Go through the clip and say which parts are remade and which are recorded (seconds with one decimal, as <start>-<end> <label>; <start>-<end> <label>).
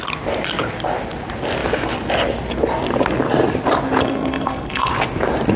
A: 0.0-4.0 recorded; 4.0-4.9 remade; 4.9-5.6 recorded